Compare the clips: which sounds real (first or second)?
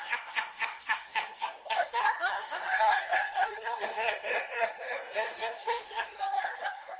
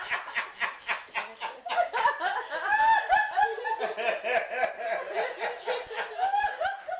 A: second